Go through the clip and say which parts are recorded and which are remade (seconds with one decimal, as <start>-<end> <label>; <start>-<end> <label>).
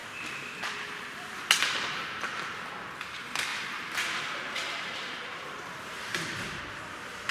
0.0-3.5 recorded; 3.5-6.6 remade; 6.6-7.3 recorded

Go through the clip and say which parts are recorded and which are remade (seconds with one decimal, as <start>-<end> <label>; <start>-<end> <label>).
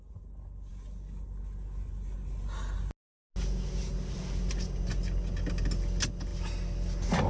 0.0-7.3 recorded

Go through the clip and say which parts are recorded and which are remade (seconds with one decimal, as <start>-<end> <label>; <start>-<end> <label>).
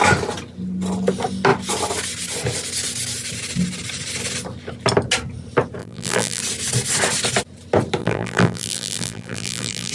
0.0-5.8 recorded; 5.8-6.4 remade; 6.4-8.0 recorded; 8.0-9.9 remade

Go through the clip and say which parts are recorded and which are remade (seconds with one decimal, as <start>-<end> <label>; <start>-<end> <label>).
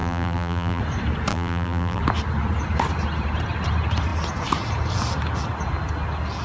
0.0-0.8 remade; 0.8-1.3 recorded; 1.3-2.0 remade; 2.0-6.4 recorded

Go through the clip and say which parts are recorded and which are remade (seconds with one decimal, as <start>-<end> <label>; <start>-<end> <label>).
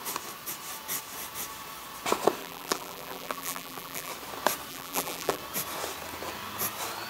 0.0-2.4 recorded; 2.4-4.1 remade; 4.1-4.7 recorded; 4.7-5.4 remade; 5.4-7.1 recorded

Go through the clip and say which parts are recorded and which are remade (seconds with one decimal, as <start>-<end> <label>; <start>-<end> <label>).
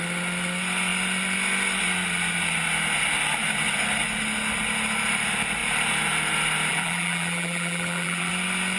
0.0-6.7 recorded; 6.7-8.3 remade; 8.3-8.8 recorded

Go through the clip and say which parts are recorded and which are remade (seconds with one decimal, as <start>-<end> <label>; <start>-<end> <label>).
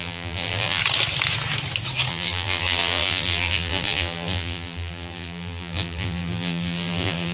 0.0-0.8 remade; 0.8-2.1 recorded; 2.1-7.3 remade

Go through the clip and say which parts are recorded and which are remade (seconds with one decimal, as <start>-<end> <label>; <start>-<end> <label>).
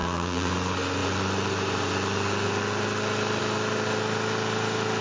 0.0-0.5 remade; 0.5-5.0 recorded